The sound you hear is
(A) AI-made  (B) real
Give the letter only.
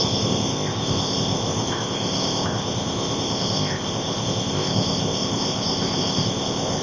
A